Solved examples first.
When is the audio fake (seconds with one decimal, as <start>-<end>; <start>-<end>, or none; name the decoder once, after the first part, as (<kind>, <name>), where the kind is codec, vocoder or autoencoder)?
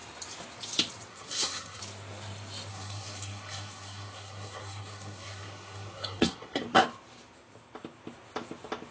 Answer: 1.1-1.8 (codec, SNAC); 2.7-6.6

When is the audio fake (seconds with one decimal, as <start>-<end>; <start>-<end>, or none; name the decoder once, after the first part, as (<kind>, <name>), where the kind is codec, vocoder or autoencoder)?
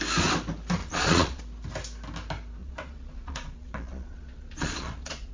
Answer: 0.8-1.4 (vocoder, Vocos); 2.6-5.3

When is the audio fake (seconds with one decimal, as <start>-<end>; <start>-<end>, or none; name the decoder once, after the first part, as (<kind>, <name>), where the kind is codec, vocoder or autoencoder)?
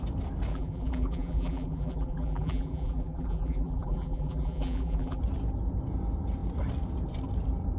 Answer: 0.5-5.2 (vocoder, BigVGAN v2)